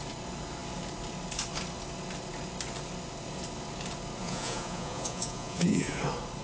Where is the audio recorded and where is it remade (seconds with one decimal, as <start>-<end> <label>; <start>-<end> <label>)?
0.0-4.2 recorded; 4.2-6.0 remade; 6.0-6.4 recorded